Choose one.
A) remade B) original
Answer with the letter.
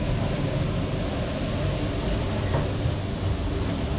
B